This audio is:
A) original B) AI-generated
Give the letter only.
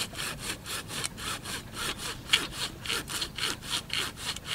A